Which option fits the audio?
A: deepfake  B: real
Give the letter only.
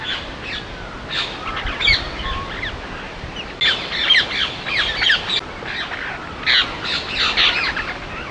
B